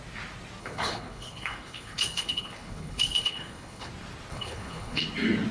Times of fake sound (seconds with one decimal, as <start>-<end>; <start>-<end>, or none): 0.6-3.9; 4.3-5.0

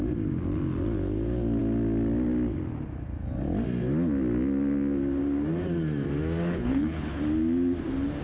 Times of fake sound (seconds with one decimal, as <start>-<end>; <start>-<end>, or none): 6.6-7.2